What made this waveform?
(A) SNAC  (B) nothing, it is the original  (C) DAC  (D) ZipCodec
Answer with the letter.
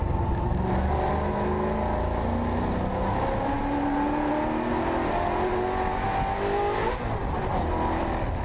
B